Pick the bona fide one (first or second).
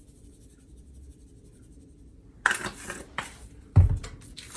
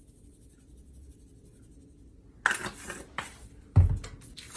second